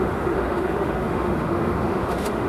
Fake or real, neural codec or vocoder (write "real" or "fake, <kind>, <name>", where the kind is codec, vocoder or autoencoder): fake, autoencoder, DAC-VAE